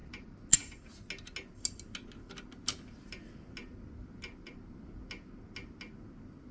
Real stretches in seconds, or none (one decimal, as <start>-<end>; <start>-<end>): 0.0-6.5